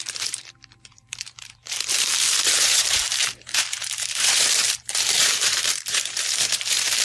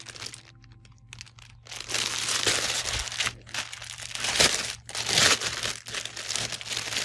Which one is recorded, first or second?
second